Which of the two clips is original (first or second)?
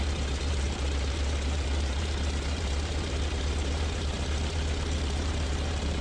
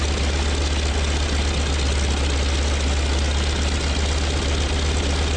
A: second